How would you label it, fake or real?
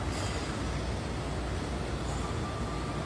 real